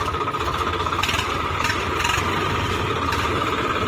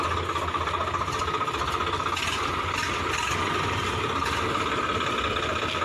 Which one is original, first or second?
second